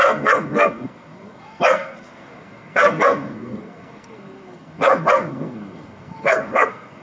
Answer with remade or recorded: remade